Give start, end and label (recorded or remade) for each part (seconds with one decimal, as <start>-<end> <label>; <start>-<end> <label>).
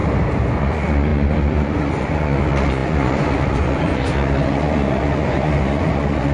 0.0-0.6 recorded; 0.6-6.3 remade